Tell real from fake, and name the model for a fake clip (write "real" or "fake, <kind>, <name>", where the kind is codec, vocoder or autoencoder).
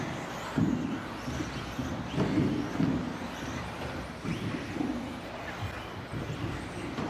real